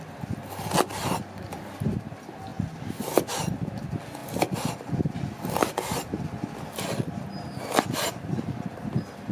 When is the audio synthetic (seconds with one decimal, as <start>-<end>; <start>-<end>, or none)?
none